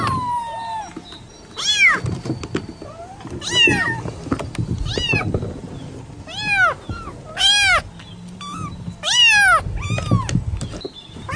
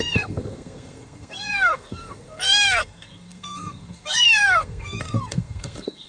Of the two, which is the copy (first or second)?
second